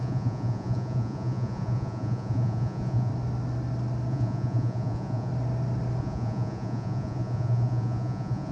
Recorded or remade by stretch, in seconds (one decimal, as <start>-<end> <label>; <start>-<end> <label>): 0.0-3.1 remade; 3.1-4.1 recorded; 4.1-5.3 remade; 5.3-6.0 recorded; 6.0-8.5 remade